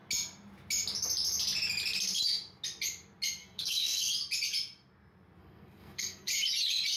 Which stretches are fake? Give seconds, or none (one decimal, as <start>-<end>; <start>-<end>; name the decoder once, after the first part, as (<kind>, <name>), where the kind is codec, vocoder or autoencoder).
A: 3.4-4.1 (codec, SNAC); 5.4-6.3